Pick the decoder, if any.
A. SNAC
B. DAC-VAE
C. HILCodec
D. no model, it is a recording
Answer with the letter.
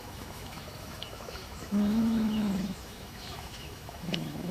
B